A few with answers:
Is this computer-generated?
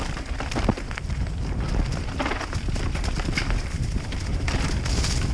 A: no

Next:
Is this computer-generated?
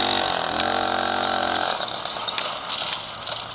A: no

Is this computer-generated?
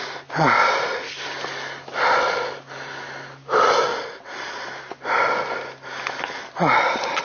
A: no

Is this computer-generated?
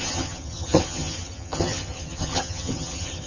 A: yes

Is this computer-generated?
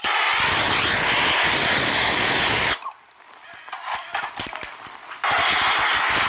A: no